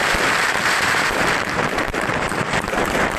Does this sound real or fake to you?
fake